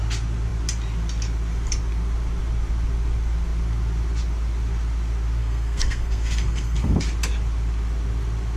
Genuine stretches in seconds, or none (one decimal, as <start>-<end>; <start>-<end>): 0.0-5.4; 7.0-8.6